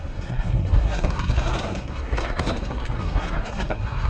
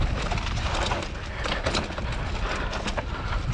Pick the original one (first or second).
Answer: second